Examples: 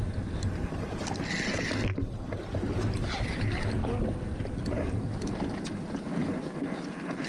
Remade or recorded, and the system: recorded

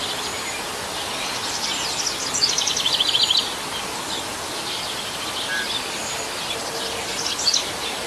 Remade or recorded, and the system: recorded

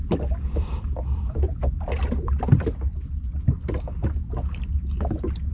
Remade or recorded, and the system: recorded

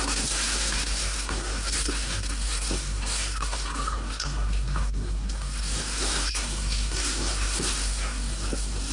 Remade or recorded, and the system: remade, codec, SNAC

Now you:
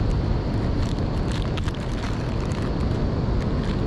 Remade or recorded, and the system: recorded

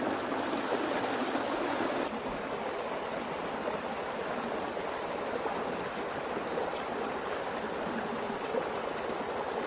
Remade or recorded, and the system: recorded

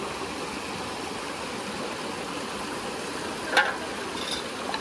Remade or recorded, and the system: recorded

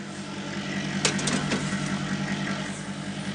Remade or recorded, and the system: recorded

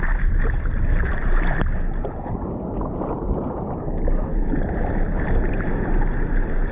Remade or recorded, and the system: recorded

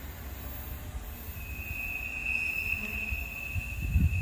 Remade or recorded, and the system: recorded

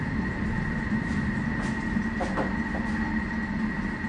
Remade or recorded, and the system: recorded